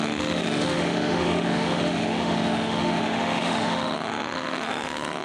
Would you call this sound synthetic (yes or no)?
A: yes